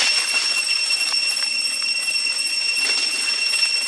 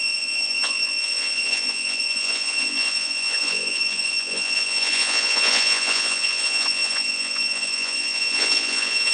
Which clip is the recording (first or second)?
first